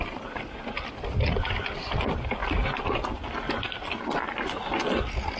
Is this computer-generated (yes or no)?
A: no